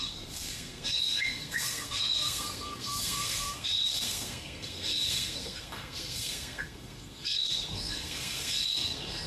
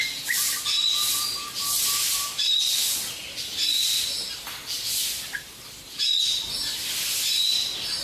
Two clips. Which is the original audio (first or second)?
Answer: second